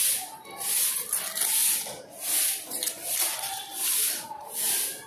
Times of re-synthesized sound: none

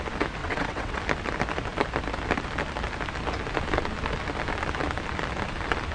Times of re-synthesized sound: 0.4-1.0 (vocoder, WaveNeXt)

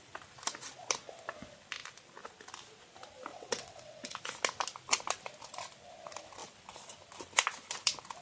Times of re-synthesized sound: 3.3-4.2 (vocoder, WaveNeXt)

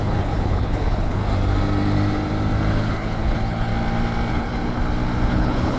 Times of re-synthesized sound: 0.0-1.2 (codec, HILCodec); 2.7-3.7; 4.3-4.8; 5.3-5.8

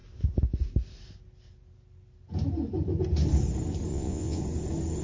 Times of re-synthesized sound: 3.9-4.4 (vocoder, Vocos)

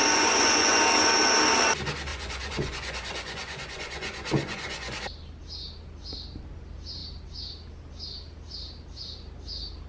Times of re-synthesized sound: 0.0-0.8 (vocoder, Vocos); 2.1-5.0

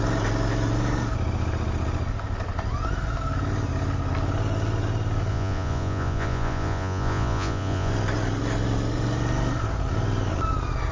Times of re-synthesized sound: 5.3-7.9 (vocoder, Vocos)

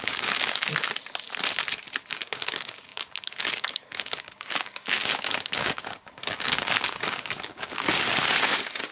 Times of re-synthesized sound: 0.0-0.7 (codec, DAC); 2.1-8.9